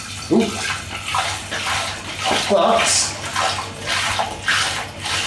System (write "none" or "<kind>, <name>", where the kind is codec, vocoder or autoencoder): none